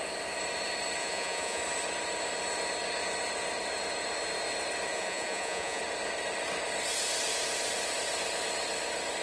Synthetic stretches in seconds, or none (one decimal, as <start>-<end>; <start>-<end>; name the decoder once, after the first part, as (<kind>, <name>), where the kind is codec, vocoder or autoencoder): 1.0-1.6 (vocoder, Vocos); 4.9-5.8